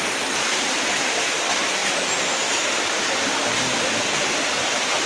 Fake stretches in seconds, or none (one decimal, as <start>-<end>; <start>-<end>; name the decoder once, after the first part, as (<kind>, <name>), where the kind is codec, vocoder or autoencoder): none